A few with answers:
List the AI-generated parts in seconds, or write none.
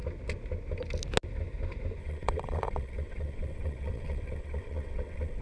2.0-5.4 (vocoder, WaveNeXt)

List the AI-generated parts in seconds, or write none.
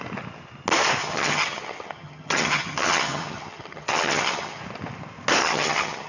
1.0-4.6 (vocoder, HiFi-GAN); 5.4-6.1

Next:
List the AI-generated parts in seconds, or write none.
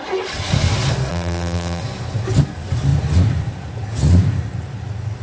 1.1-1.8 (vocoder, BigVGAN v2)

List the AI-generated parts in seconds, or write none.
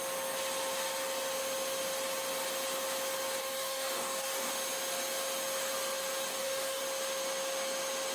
3.4-4.5 (codec, DAC); 6.3-6.8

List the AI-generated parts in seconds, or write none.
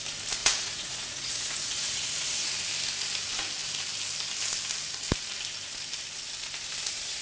0.4-2.5 (vocoder, Vocos)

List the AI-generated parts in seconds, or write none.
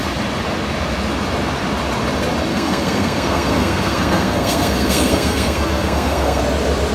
2.5-6.4 (codec, SNAC)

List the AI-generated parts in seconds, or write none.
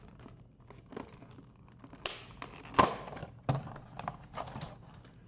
none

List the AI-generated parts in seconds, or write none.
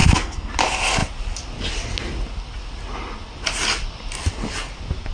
0.0-0.5 (codec, SNAC)